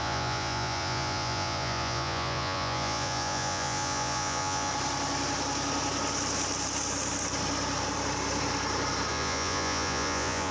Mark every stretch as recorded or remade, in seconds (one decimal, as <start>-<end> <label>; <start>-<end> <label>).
0.0-4.7 remade; 4.7-9.1 recorded; 9.1-10.5 remade